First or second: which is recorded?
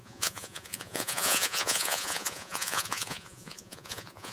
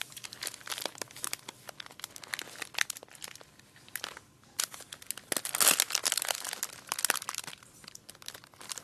second